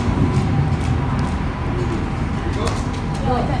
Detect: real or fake real